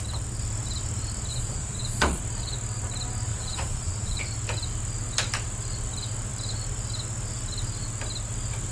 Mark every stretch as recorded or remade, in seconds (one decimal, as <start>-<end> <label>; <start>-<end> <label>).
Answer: 0.0-1.3 recorded; 1.3-2.2 remade; 2.2-3.3 recorded; 3.3-4.2 remade; 4.2-8.7 recorded

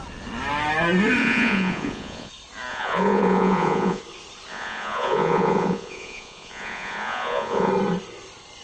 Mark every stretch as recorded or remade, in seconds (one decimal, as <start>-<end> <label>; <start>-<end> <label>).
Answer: 0.0-1.2 recorded; 1.2-2.3 remade; 2.3-2.7 recorded; 2.7-4.0 remade; 4.0-4.5 recorded; 4.5-7.7 remade; 7.7-8.6 recorded

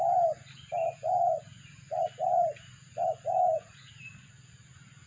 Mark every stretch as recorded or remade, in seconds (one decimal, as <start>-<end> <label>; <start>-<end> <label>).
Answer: 0.0-0.8 recorded; 0.8-3.9 remade; 3.9-5.1 recorded